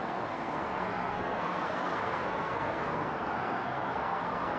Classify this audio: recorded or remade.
remade